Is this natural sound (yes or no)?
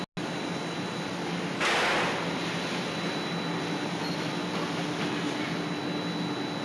yes